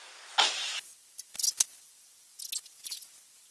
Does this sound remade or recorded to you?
recorded